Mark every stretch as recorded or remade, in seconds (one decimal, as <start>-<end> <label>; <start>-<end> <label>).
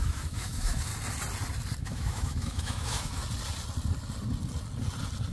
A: 0.0-0.9 remade; 0.9-1.8 recorded; 1.8-3.2 remade; 3.2-5.3 recorded